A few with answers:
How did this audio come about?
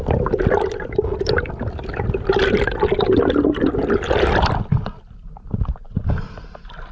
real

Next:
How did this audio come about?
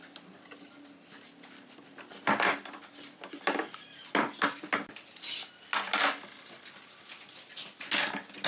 real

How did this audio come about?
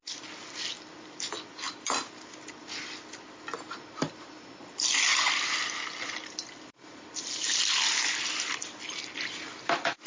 real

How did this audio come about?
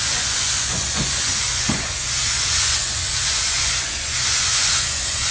fake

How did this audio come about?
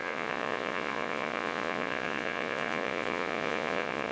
fake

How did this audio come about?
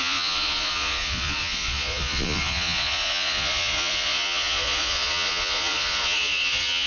fake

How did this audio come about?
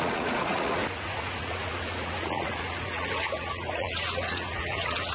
fake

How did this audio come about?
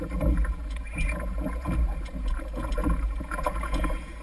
fake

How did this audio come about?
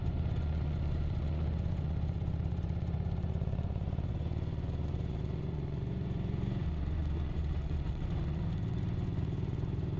fake